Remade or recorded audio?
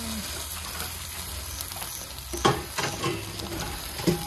recorded